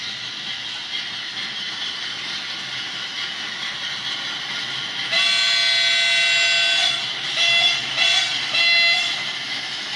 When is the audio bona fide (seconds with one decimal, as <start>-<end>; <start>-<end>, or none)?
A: 0.0-0.8; 2.1-10.0